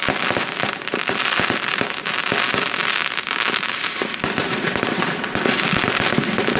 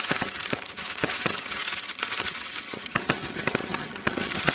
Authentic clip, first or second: first